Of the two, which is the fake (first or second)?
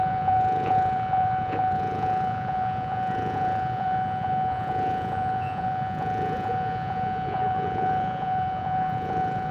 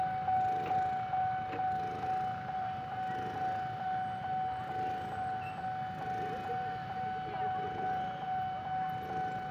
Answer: first